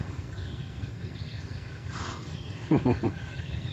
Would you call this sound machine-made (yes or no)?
yes